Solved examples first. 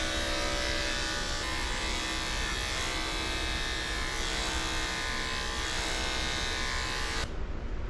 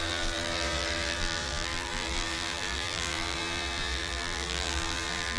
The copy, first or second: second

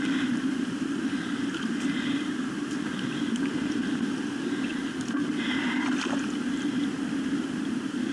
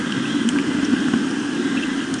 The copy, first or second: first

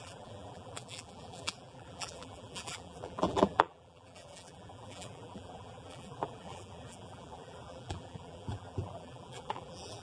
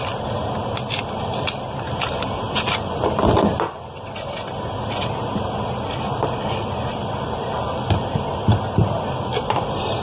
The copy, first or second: first